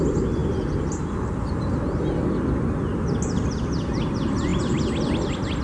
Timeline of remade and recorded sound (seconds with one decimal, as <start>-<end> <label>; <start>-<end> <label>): 0.0-5.6 recorded